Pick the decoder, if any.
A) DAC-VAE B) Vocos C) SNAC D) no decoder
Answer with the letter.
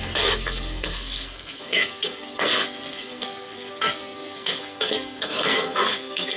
C